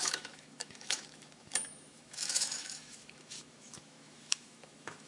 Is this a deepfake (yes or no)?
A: yes